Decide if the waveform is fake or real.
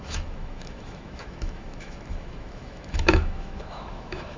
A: fake